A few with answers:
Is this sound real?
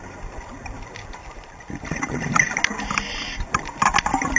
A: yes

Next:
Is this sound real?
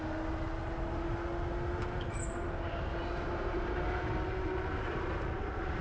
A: yes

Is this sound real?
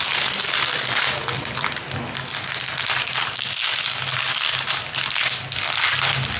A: yes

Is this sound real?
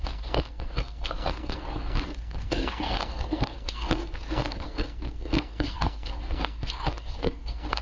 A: no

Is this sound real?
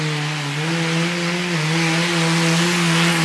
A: yes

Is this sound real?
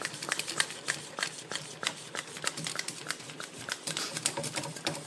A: yes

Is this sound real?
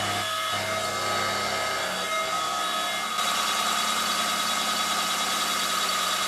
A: yes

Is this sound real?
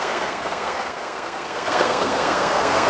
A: no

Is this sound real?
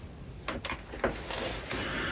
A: yes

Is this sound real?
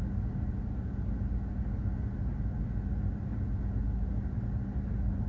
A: yes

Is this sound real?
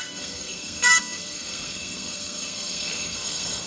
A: no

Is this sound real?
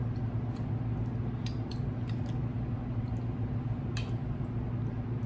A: yes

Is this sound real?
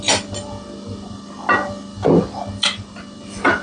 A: yes